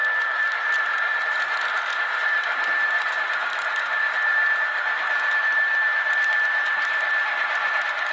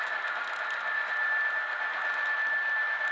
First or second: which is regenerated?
first